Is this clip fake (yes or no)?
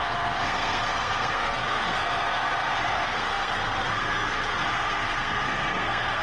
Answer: yes